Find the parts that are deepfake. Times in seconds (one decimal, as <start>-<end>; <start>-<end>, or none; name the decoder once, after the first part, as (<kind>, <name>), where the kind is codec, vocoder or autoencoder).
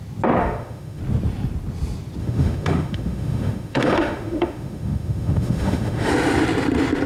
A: 0.4-1.0 (autoencoder, DAC-VAE); 2.2-6.1